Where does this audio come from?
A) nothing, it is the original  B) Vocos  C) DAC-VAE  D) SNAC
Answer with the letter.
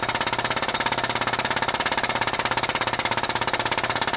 A